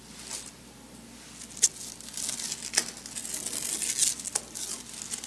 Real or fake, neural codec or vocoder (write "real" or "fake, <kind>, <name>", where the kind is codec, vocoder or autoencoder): real